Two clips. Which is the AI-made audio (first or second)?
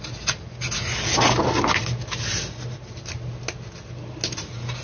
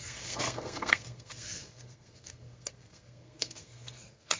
second